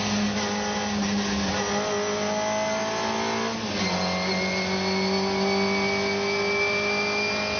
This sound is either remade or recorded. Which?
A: recorded